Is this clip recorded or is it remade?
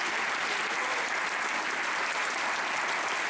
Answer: recorded